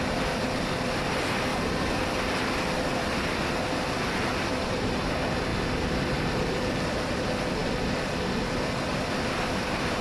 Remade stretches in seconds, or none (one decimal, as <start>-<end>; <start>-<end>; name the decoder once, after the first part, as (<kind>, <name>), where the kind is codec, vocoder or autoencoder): none

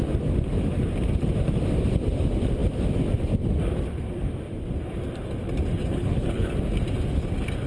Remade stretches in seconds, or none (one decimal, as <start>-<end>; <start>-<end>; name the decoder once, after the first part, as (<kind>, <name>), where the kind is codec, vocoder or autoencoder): 5.8-6.5 (codec, HILCodec)

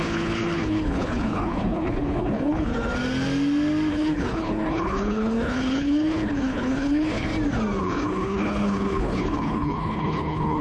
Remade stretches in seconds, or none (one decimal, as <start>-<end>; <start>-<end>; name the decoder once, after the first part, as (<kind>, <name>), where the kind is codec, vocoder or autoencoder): 0.0-2.7 (codec, HILCodec); 3.9-7.3; 7.8-10.6

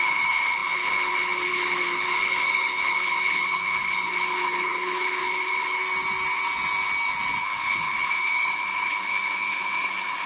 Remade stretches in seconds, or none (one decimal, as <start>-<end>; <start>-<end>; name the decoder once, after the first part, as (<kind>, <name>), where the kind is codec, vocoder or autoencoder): 0.0-5.8 (codec, HILCodec); 7.4-10.3

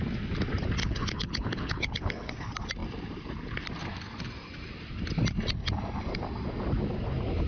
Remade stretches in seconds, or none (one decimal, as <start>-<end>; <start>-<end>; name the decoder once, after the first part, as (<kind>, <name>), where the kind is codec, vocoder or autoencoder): 0.8-2.3 (codec, HILCodec)

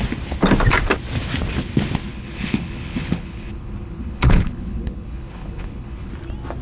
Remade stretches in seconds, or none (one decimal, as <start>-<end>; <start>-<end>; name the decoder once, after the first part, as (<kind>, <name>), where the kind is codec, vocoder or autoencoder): 2.1-6.1 (codec, HILCodec)